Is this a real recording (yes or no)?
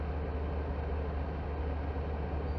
yes